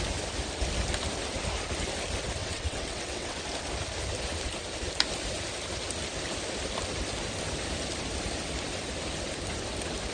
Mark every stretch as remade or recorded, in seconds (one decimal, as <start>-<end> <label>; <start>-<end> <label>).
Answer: 0.0-2.4 recorded; 2.4-3.4 remade; 3.4-10.1 recorded